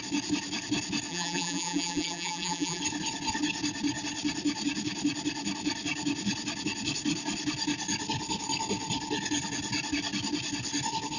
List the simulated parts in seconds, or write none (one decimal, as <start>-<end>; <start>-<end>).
1.1-2.8

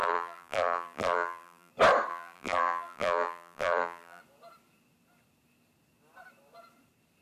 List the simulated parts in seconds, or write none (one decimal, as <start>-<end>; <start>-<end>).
0.0-1.7; 2.1-4.2

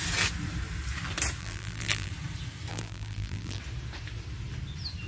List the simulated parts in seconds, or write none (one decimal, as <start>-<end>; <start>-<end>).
1.4-2.1; 2.7-3.6

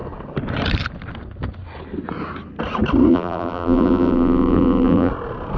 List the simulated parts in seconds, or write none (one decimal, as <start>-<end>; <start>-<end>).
3.1-5.1

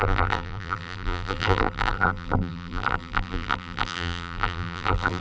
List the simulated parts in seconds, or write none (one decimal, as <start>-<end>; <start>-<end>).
0.0-5.2

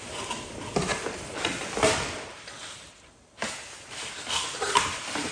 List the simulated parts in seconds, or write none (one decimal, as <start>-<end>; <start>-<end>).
0.0-0.9; 3.9-5.3